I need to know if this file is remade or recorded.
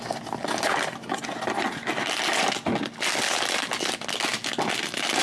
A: recorded